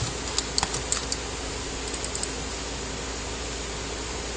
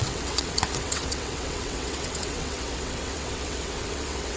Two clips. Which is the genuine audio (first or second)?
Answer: first